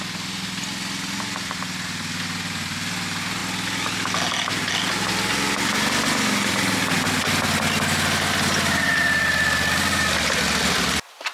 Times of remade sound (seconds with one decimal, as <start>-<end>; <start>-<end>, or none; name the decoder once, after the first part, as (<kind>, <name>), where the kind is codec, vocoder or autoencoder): none